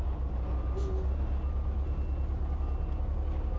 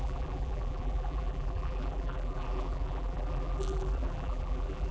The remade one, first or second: second